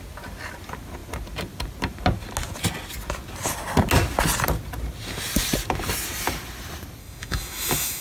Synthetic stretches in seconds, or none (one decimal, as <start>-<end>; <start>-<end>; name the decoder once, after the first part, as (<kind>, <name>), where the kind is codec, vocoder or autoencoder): 7.0-8.0 (autoencoder, DAC-VAE)